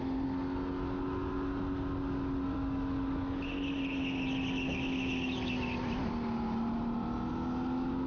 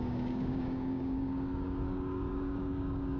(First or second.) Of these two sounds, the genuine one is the first